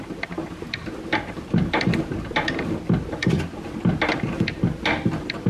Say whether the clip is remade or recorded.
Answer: recorded